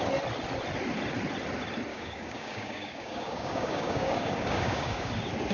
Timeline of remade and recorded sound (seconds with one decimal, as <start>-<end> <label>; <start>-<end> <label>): 0.0-1.9 recorded; 1.9-5.1 remade; 5.1-5.5 recorded